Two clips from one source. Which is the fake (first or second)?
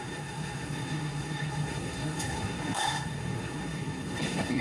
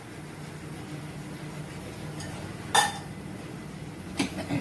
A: first